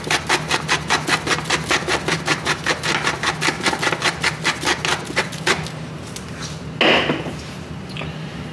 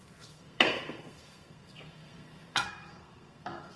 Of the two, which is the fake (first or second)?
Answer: second